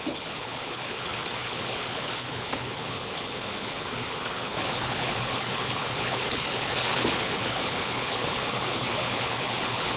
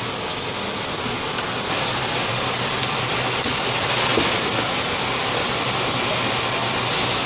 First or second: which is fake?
first